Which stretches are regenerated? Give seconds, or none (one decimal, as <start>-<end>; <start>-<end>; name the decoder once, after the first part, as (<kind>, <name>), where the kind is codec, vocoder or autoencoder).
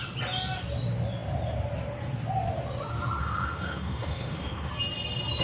3.2-4.7 (autoencoder, DAC-VAE)